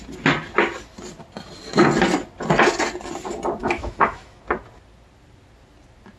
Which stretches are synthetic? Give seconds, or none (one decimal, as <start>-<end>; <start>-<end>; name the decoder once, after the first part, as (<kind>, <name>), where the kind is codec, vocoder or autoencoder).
3.6-4.4 (autoencoder, DAC-VAE)